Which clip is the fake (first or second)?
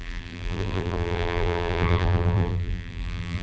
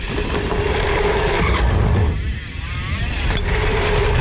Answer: first